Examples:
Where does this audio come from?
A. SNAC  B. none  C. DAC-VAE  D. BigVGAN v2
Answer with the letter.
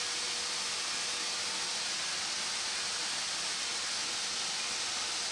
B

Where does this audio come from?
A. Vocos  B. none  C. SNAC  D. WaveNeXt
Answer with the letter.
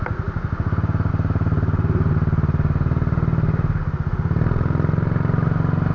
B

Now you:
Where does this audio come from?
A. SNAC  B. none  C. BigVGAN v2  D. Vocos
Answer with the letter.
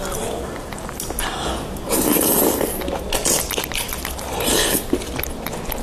B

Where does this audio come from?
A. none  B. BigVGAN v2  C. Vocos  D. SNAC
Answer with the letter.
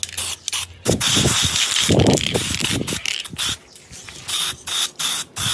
A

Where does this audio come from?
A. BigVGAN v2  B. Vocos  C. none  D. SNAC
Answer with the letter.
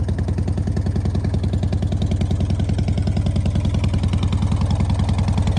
C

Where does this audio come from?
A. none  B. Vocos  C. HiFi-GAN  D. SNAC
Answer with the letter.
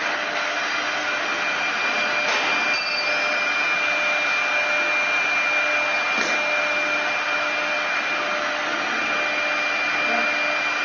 A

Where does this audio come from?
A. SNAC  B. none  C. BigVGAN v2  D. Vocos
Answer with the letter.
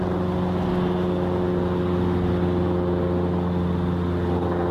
B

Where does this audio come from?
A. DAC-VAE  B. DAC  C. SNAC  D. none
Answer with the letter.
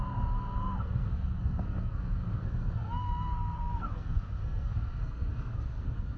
C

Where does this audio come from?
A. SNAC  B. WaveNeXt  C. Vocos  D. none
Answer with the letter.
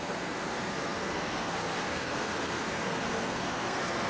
A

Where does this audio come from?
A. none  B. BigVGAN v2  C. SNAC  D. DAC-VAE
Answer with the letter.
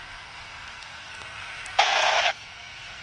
C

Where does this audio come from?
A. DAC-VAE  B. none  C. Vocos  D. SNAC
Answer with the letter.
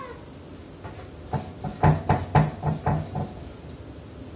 B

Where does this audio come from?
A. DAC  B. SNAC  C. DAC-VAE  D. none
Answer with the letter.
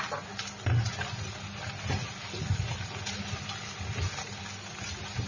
D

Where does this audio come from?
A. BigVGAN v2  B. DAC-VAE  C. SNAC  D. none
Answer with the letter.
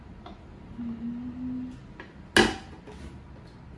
D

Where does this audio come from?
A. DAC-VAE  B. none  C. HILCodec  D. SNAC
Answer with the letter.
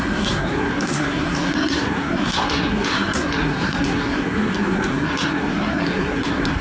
D